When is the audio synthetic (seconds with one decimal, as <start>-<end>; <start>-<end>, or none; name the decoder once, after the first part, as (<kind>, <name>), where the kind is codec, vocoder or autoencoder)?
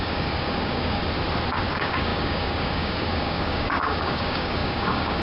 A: 0.0-1.0 (codec, DAC); 1.7-5.2